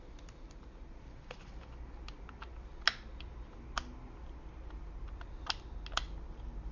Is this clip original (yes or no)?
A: yes